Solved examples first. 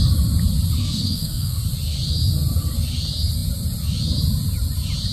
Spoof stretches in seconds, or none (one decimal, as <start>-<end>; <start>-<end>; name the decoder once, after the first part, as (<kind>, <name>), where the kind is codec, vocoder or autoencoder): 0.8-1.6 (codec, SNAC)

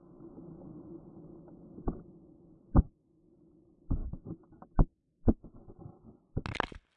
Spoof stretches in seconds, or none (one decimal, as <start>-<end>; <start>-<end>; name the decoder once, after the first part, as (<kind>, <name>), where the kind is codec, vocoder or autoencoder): none

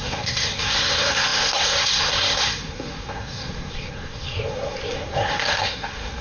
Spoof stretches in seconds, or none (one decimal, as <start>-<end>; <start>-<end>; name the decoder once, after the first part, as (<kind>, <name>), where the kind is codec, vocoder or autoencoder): 0.0-6.2 (codec, SNAC)

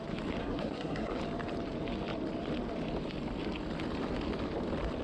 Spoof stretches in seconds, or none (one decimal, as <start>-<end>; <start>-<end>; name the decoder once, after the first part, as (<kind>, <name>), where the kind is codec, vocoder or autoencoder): 0.4-1.2 (codec, SNAC)

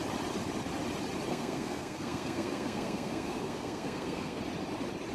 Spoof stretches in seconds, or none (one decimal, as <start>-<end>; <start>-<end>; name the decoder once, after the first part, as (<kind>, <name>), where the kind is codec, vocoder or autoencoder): 1.3-4.4 (codec, SNAC)

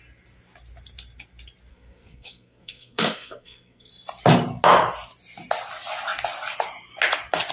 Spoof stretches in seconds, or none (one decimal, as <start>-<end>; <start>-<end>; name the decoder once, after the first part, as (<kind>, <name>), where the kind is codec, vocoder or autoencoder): 1.7-3.9 (codec, SNAC)